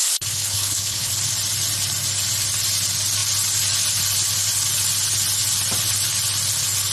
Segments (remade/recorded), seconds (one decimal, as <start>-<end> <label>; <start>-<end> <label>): 0.0-1.1 remade; 1.1-6.9 recorded